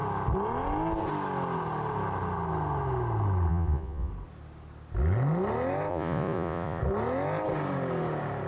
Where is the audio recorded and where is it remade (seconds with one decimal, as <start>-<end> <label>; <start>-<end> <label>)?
0.0-3.5 recorded; 3.5-4.1 remade; 4.1-5.9 recorded; 5.9-6.8 remade; 6.8-8.5 recorded